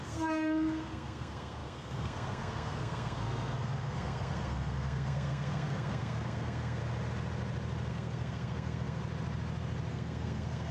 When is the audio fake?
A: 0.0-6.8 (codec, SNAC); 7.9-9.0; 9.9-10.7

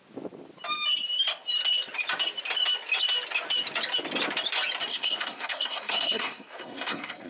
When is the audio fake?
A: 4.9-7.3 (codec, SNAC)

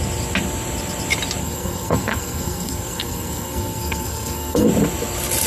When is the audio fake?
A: 1.4-4.7 (codec, SNAC)

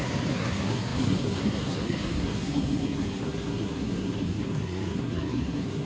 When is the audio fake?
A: 0.0-5.9 (codec, SNAC)

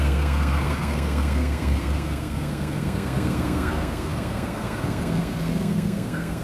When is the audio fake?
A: 0.0-6.4 (codec, SNAC)

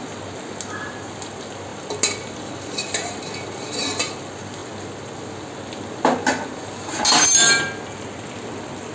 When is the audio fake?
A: none

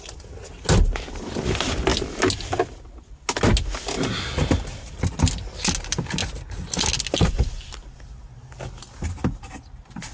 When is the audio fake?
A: none

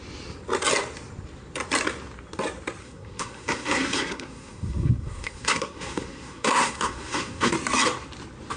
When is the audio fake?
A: 2.8-7.5 (codec, SNAC)